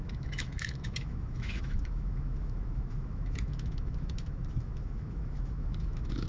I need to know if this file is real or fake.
fake